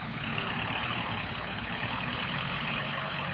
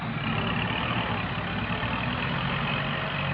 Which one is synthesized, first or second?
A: first